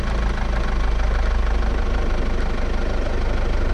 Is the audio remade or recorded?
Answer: recorded